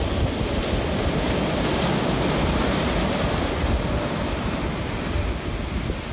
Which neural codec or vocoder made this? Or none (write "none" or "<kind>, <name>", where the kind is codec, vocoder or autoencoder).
none